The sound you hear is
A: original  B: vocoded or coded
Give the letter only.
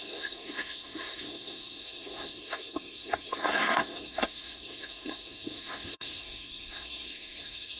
B